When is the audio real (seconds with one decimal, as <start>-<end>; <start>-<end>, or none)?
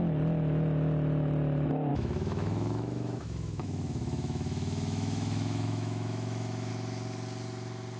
0.0-1.9; 6.7-8.0